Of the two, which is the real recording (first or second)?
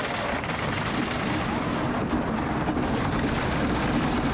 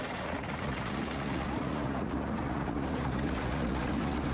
first